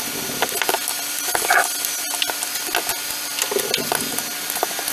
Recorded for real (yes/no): yes